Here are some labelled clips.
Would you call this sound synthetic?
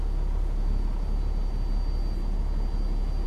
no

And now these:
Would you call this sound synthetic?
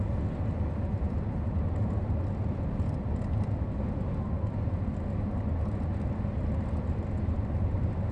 no